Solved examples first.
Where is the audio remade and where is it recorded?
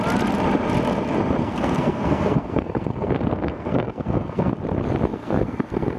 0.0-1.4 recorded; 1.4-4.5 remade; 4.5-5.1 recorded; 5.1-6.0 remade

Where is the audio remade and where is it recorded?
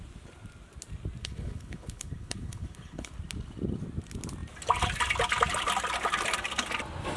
0.0-1.2 recorded; 1.2-3.1 remade; 3.1-7.2 recorded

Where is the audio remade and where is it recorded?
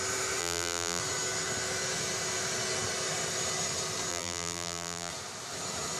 0.0-0.4 recorded; 0.4-1.0 remade; 1.0-4.1 recorded; 4.1-5.1 remade; 5.1-6.0 recorded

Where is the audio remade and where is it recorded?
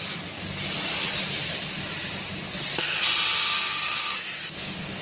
0.0-3.4 recorded; 3.4-4.2 remade; 4.2-5.0 recorded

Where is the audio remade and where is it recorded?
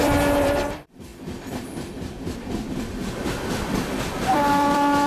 0.0-5.1 remade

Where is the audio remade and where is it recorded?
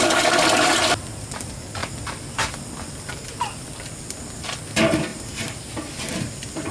0.0-5.1 recorded; 5.1-6.3 remade; 6.3-6.7 recorded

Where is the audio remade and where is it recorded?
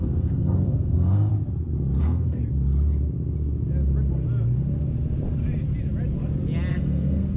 0.0-1.3 remade; 1.3-2.0 recorded; 2.0-2.4 remade; 2.4-6.7 recorded; 6.7-7.4 remade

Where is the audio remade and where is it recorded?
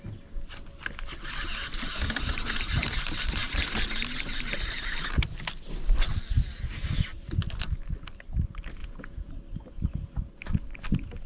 0.0-8.8 recorded; 8.8-9.3 remade; 9.3-11.3 recorded